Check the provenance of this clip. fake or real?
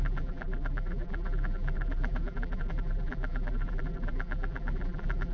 fake